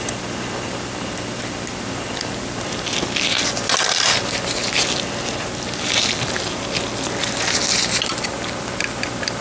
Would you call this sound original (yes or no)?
yes